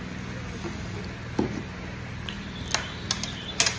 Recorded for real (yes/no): yes